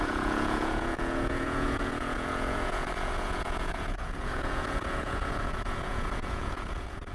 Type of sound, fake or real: fake